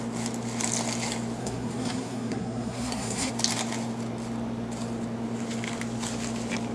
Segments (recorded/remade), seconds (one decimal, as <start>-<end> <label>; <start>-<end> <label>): 0.0-1.4 recorded; 1.4-3.3 remade; 3.3-6.7 recorded